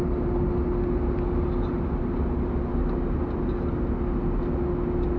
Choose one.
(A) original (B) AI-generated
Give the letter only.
A